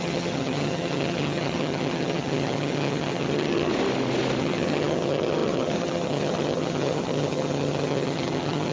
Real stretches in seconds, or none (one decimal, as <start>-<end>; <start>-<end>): 3.7-4.4